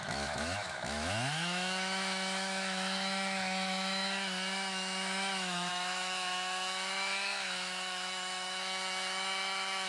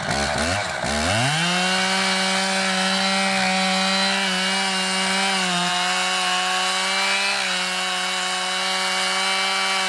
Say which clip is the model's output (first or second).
first